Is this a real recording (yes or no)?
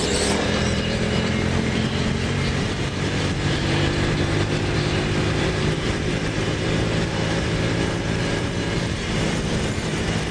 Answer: no